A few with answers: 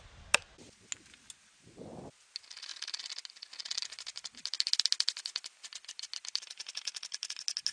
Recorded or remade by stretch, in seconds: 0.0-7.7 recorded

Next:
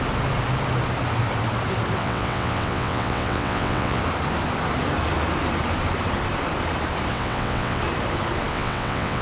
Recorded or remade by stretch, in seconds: 0.0-2.0 recorded; 2.0-4.0 remade; 4.0-7.1 recorded; 7.1-7.8 remade; 7.8-8.5 recorded; 8.5-9.2 remade